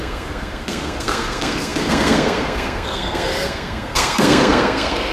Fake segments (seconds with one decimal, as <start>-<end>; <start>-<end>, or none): 0.0-5.1